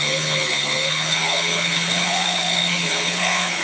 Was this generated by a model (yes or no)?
yes